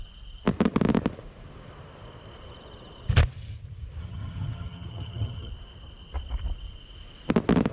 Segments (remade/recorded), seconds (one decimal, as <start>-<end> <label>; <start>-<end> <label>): 0.0-4.0 recorded; 4.0-5.5 remade; 5.5-7.7 recorded